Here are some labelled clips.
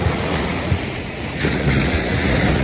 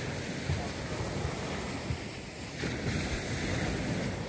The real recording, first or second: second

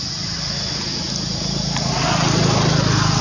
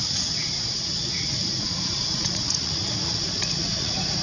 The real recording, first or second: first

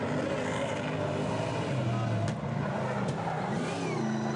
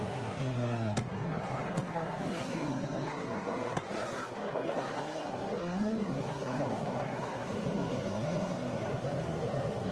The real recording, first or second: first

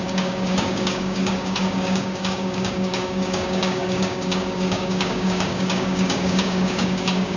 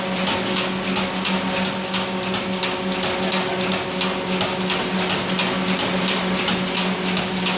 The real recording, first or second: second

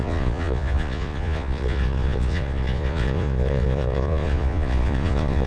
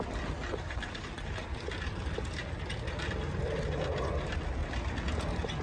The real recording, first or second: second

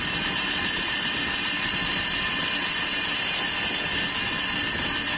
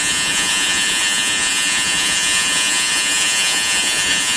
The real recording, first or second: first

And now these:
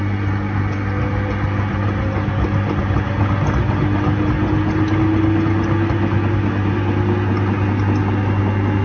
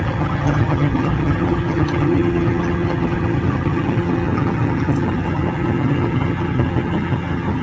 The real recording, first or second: first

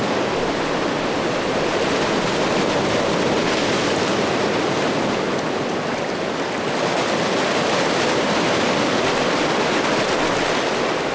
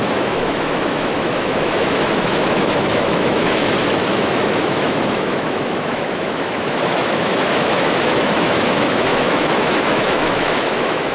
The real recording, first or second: first